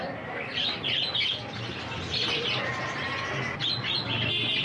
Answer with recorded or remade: recorded